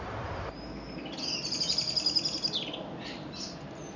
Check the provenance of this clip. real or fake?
real